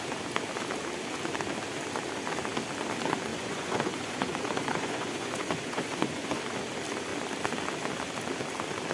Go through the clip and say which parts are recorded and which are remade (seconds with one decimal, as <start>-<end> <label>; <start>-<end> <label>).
0.0-3.3 recorded; 3.3-6.4 remade; 6.4-8.9 recorded